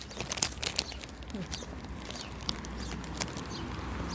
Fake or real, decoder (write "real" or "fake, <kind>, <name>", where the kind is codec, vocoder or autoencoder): real